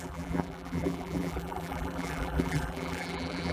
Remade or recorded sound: remade